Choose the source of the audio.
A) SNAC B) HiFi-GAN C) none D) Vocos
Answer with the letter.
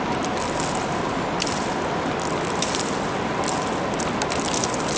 C